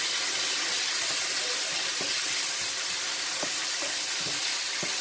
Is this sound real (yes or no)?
yes